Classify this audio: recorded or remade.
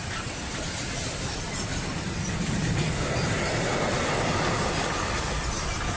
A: recorded